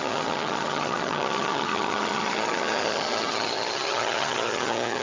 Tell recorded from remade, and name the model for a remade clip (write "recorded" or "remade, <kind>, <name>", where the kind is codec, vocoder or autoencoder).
remade, vocoder, HiFi-GAN